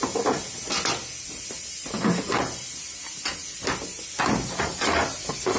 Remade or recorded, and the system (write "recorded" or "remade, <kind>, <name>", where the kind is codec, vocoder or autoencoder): recorded